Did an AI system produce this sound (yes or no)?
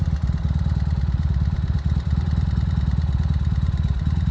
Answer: yes